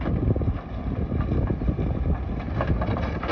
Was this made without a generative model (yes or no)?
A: yes